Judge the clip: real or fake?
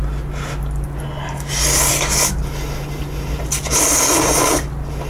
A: real